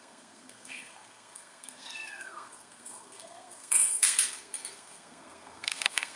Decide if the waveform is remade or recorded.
remade